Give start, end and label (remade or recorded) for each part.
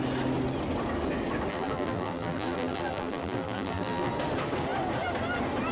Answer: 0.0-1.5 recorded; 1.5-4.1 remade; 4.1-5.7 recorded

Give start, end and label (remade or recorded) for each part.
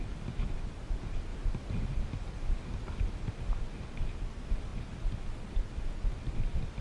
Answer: 0.0-4.7 recorded; 4.7-5.7 remade; 5.7-6.8 recorded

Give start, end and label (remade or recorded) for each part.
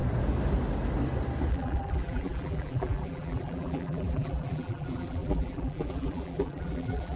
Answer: 0.0-1.5 recorded; 1.5-7.2 remade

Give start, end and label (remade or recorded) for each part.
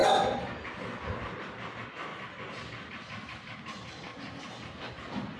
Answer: 0.0-5.4 recorded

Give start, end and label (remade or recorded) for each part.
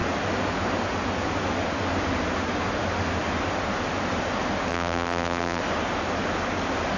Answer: 0.0-4.7 recorded; 4.7-5.6 remade; 5.6-7.0 recorded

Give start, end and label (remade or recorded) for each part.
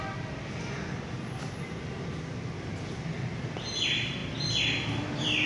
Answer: 0.0-5.5 recorded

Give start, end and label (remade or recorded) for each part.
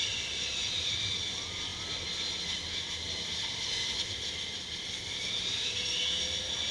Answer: 0.0-6.7 recorded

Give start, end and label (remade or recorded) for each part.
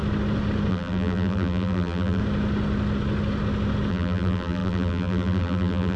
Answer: 0.0-0.7 recorded; 0.7-2.2 remade; 2.2-3.9 recorded; 3.9-6.0 remade